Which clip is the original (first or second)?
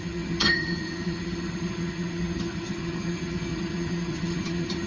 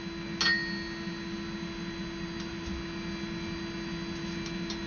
second